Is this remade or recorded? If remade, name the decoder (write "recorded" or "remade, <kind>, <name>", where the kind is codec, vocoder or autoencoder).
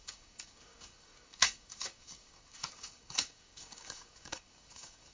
remade, codec, DAC